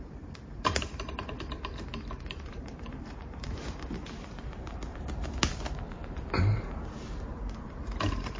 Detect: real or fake fake